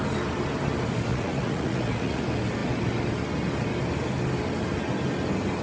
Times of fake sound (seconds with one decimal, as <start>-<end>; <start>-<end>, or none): 1.1-2.2